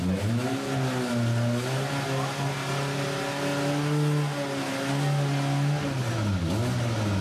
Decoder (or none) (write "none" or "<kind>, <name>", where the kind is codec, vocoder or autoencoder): none